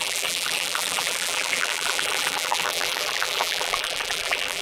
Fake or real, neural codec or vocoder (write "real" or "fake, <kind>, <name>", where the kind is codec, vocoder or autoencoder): fake, vocoder, BigVGAN v2